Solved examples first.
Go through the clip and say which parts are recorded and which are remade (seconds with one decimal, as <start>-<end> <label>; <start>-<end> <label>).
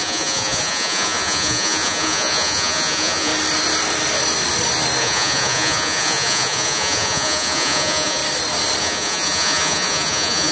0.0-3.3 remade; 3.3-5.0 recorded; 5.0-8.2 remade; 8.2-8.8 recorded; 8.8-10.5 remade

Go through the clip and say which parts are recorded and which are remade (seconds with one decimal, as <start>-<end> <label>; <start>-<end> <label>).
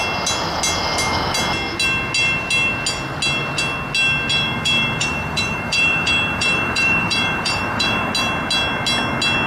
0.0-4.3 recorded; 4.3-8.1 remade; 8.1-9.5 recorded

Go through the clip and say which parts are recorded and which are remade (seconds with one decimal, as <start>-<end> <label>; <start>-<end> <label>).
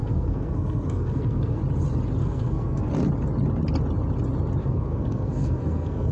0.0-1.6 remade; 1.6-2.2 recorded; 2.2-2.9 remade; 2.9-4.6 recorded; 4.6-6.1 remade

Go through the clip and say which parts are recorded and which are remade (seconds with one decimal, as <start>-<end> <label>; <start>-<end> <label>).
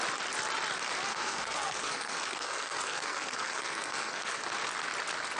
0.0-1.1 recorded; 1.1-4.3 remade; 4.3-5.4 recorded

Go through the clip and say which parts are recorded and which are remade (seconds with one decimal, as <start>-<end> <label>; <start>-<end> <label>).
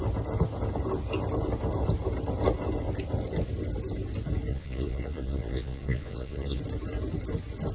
0.0-4.5 recorded; 4.5-6.6 remade; 6.6-7.7 recorded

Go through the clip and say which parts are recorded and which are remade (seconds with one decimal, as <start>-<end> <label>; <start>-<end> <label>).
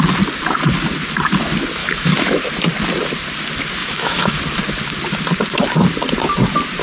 0.0-1.8 recorded; 1.8-2.4 remade; 2.4-3.8 recorded; 3.8-4.4 remade; 4.4-6.8 recorded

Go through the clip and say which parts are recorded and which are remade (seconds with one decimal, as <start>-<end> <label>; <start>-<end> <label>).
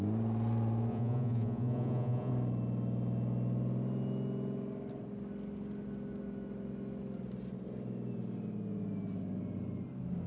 0.0-0.9 recorded; 0.9-2.3 remade; 2.3-10.3 recorded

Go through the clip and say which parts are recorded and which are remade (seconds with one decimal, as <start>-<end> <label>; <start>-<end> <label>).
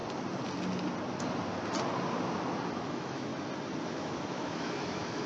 0.0-2.8 recorded; 2.8-3.3 remade; 3.3-3.9 recorded; 3.9-5.3 remade